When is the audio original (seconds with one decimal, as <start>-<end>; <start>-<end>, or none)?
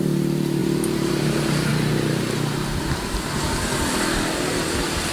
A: 0.0-5.1